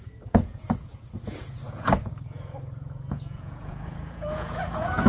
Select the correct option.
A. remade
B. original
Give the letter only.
A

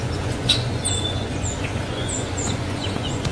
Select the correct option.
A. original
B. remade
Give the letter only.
B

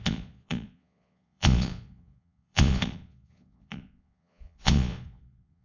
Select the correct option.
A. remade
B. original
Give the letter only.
A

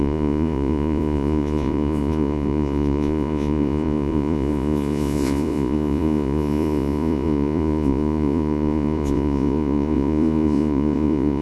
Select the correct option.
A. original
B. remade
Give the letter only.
B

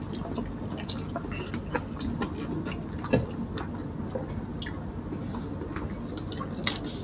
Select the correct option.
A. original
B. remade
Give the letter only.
A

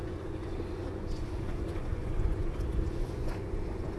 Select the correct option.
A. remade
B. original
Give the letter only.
A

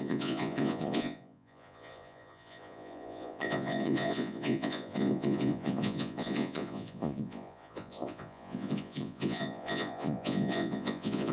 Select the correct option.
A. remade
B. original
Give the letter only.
A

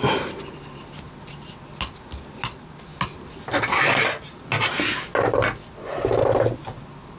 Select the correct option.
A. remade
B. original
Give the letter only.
B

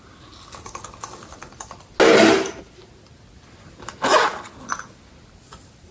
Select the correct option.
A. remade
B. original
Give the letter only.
B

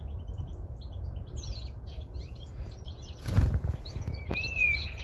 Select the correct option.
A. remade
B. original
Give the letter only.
A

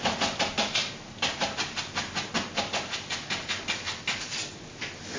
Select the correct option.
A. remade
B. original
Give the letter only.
B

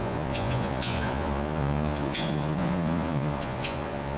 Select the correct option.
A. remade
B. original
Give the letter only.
A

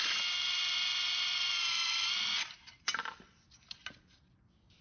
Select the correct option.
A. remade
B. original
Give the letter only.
B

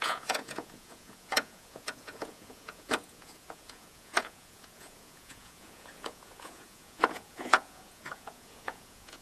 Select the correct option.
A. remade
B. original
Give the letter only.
A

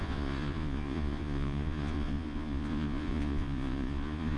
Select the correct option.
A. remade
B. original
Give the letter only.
A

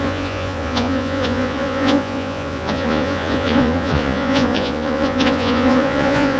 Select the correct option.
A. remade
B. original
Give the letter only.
A